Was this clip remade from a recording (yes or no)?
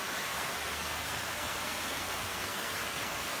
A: yes